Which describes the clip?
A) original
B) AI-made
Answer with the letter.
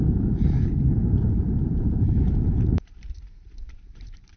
B